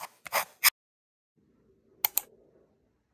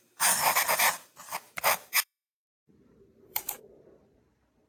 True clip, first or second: first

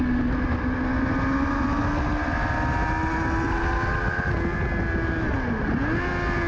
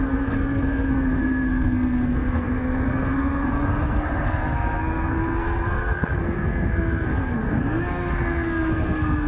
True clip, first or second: first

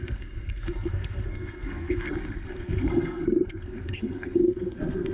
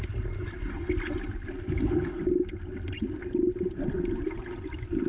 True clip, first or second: second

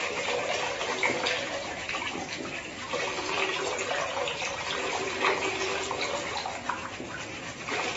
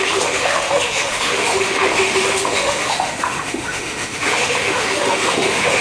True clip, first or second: first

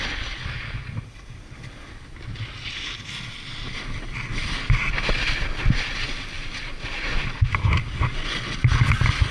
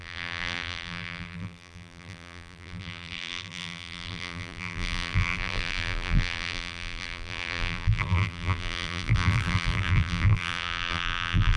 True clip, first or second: first